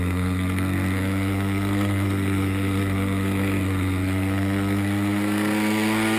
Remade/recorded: remade